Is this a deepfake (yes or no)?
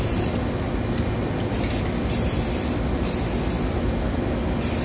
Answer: yes